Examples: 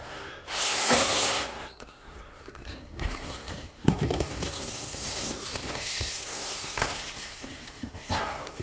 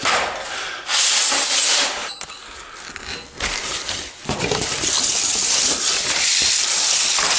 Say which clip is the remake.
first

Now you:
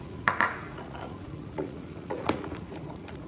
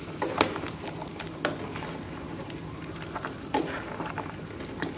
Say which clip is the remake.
first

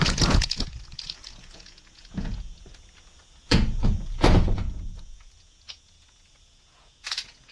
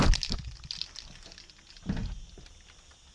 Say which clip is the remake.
first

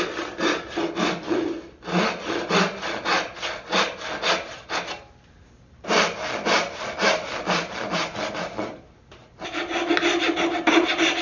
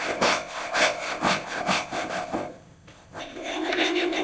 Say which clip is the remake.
second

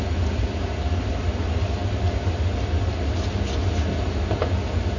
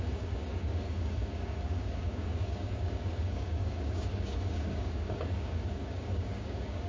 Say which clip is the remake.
second